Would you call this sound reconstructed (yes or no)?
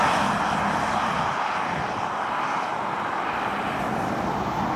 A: no